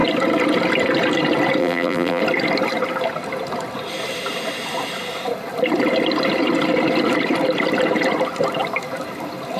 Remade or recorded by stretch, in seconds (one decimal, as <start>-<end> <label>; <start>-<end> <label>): 0.0-1.6 recorded; 1.6-2.2 remade; 2.2-9.6 recorded